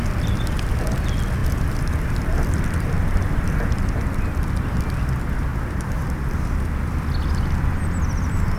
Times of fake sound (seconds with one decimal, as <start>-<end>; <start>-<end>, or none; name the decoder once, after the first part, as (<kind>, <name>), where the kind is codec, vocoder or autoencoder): 1.4-4.5 (vocoder, BigVGAN v2); 5.5-6.6